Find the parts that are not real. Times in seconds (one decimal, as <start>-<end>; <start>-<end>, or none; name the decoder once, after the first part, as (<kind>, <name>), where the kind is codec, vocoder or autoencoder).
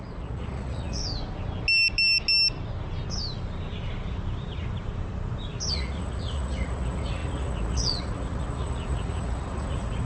0.0-1.0 (vocoder, Vocos); 5.7-10.1